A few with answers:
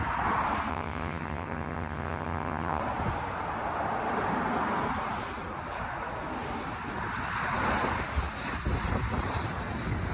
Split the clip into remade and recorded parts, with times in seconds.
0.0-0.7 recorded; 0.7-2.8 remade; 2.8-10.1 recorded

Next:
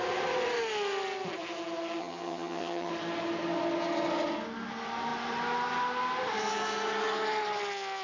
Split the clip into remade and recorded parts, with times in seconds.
0.0-2.0 recorded; 2.0-2.9 remade; 2.9-8.0 recorded